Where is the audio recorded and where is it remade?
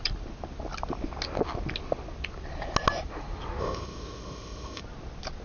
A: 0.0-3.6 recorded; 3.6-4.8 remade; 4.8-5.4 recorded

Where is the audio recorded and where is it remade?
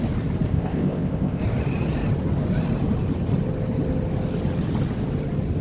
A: 0.0-0.5 recorded; 0.5-1.4 remade; 1.4-5.6 recorded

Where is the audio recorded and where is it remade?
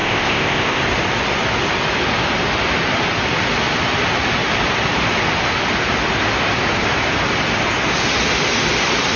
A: 0.0-0.8 remade; 0.8-9.2 recorded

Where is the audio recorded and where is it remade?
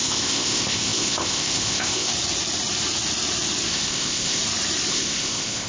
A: 0.0-2.1 remade; 2.1-3.7 recorded; 3.7-4.4 remade; 4.4-4.9 recorded; 4.9-5.7 remade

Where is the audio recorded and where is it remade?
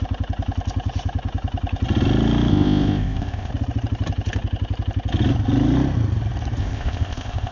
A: 0.0-2.5 recorded; 2.5-3.5 remade; 3.5-6.6 recorded; 6.6-7.5 remade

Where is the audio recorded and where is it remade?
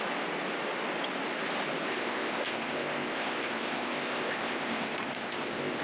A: 0.0-1.9 recorded; 1.9-5.8 remade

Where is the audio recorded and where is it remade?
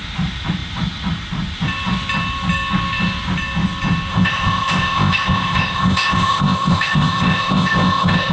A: 0.0-4.1 recorded; 4.1-8.3 remade